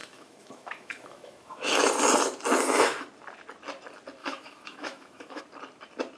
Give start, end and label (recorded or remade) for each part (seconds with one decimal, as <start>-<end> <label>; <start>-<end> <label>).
0.0-1.7 remade; 1.7-4.2 recorded; 4.2-5.4 remade; 5.4-6.2 recorded